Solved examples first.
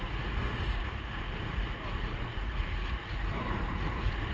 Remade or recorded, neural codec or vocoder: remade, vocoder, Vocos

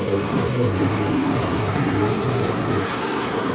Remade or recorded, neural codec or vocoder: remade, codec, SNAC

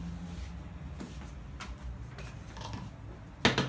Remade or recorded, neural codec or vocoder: recorded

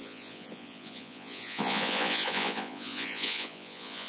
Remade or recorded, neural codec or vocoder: remade, vocoder, Vocos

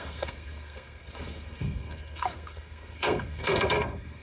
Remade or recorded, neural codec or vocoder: remade, codec, SNAC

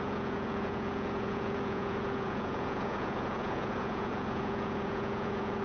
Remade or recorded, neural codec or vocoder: remade, vocoder, Vocos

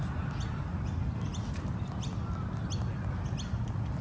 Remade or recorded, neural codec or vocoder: recorded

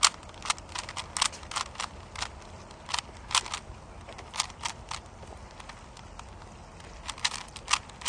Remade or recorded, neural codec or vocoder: recorded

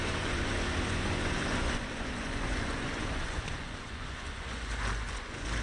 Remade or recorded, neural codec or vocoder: remade, vocoder, Vocos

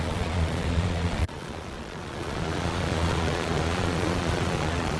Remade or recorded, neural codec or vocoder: remade, vocoder, Vocos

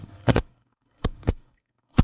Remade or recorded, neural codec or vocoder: remade, codec, SNAC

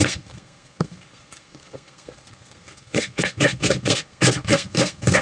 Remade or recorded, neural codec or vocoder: remade, codec, SNAC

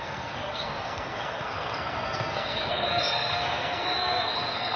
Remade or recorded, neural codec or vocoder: remade, codec, SNAC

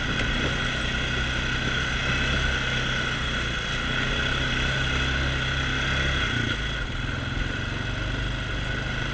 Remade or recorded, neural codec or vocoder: recorded